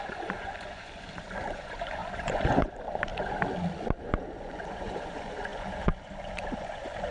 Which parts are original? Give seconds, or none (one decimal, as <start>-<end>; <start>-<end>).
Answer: 3.1-4.0